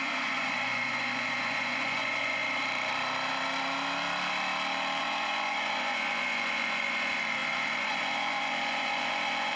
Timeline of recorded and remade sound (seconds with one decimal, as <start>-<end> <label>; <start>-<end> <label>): 0.0-2.4 remade; 2.4-5.0 recorded; 5.0-9.6 remade